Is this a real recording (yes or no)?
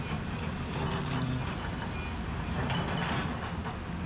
yes